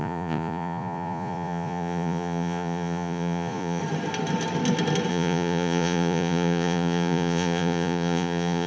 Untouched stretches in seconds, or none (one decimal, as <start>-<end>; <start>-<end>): 3.8-5.1